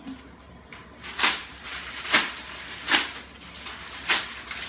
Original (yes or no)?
yes